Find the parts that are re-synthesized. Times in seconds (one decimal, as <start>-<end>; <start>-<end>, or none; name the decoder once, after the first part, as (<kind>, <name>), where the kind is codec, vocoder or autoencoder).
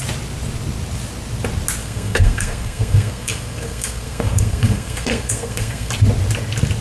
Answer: 1.8-5.9 (codec, SNAC)